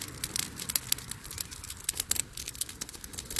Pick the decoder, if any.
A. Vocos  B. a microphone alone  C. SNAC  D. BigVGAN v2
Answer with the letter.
B